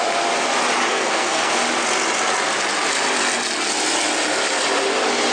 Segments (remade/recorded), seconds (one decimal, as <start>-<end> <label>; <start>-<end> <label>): 0.0-0.9 recorded; 0.9-1.5 remade; 1.5-5.3 recorded